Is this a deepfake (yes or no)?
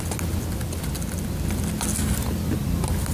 no